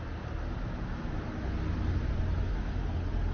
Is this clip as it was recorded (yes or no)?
yes